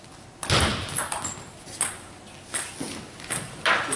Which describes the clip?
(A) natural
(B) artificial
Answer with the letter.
A